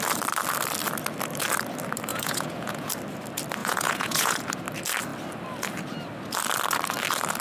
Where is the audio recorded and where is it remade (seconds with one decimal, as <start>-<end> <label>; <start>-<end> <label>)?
0.0-2.1 recorded; 2.1-2.9 remade; 2.9-3.6 recorded; 3.6-4.5 remade; 4.5-7.4 recorded